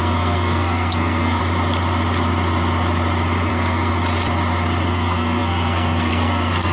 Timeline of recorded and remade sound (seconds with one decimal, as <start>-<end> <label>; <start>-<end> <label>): 0.0-1.4 remade; 1.4-3.5 recorded; 3.5-3.9 remade; 3.9-4.9 recorded; 4.9-6.7 remade